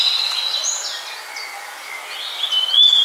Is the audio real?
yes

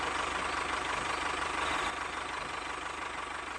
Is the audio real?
yes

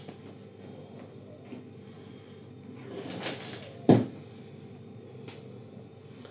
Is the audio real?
yes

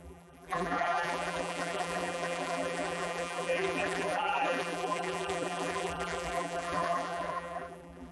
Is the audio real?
no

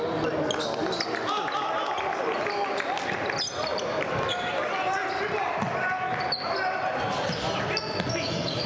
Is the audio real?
yes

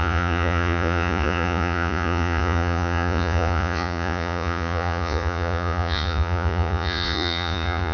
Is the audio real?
no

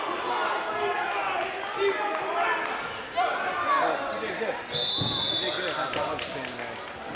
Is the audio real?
yes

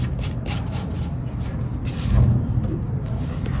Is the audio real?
no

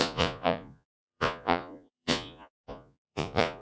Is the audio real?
no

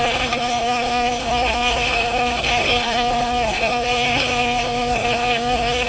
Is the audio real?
no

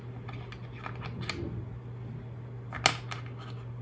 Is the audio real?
yes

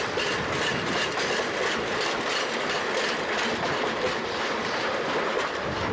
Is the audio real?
yes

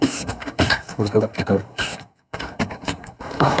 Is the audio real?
no